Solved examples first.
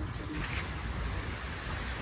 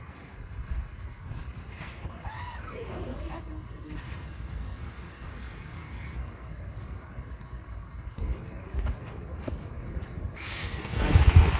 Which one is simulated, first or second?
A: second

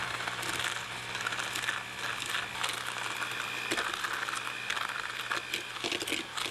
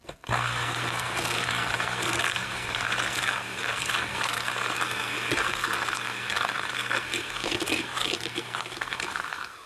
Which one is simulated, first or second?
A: second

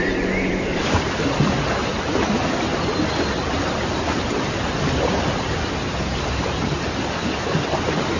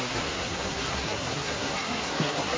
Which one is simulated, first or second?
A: second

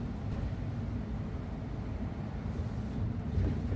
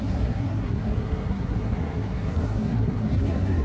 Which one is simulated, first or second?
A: second